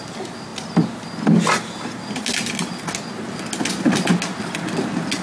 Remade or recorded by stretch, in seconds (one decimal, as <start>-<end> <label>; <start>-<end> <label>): 0.0-5.2 recorded